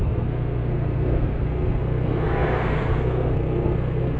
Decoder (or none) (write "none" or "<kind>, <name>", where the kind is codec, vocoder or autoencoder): codec, SNAC